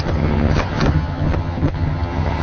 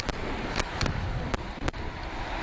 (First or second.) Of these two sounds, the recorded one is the second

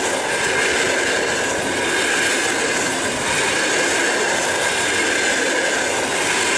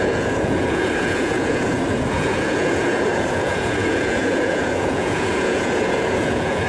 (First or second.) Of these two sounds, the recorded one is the first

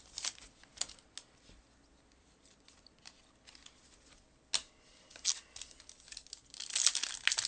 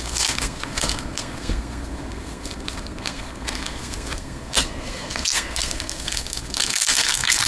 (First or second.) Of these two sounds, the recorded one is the first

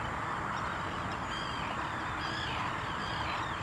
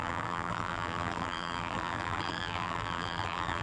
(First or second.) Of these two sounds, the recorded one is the first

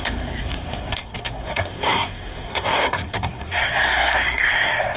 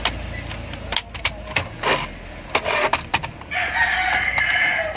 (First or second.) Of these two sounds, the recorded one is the second